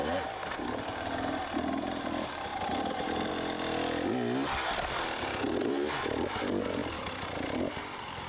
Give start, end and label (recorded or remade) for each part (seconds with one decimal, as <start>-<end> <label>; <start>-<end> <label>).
0.0-2.5 recorded; 2.5-3.3 remade; 3.3-6.8 recorded; 6.8-8.3 remade